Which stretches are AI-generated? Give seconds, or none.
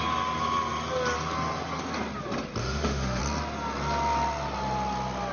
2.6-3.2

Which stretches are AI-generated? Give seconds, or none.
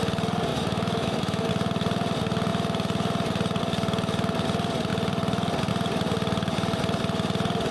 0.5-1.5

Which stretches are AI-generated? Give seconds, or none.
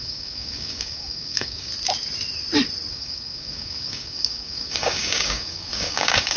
0.0-1.7; 2.9-6.4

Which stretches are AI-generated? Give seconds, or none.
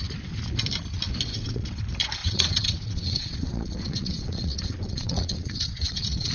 1.3-1.8; 2.2-6.3